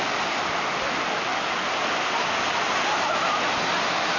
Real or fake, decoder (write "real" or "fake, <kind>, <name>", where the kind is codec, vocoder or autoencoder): real